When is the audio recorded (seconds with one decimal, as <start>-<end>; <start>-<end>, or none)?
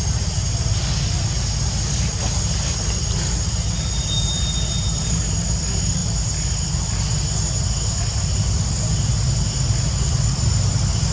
0.0-11.1